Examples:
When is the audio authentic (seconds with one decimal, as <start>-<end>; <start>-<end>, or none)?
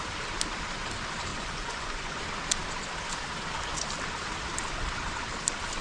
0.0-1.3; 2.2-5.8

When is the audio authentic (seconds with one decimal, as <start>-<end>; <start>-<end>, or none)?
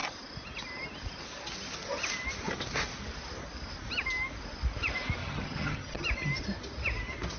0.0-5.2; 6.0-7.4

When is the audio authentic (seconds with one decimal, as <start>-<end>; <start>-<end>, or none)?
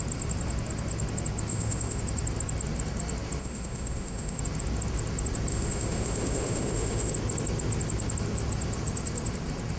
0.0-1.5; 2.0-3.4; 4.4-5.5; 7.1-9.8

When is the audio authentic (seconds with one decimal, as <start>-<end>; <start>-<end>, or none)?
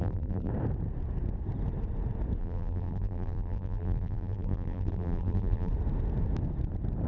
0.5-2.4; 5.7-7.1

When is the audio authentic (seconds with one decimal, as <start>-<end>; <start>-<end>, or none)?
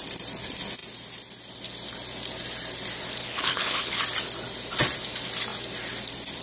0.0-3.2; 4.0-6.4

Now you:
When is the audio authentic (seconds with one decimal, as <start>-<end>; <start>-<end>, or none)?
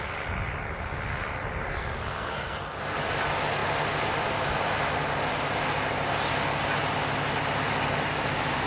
0.0-1.7; 2.6-8.7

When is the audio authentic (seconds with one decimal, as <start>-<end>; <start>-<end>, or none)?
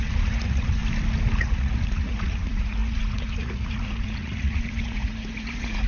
0.8-1.4